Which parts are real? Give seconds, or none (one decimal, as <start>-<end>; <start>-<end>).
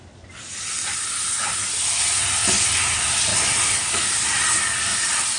0.0-5.4